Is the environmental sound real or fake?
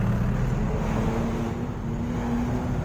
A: real